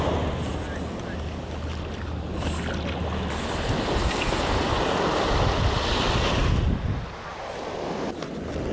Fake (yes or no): no